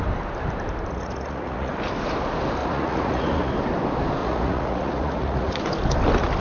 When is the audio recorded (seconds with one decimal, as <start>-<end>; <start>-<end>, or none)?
0.0-0.9; 1.7-2.6; 3.5-4.2; 5.6-6.4